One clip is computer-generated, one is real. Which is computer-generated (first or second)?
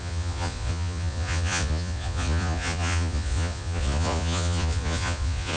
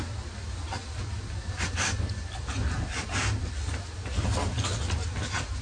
first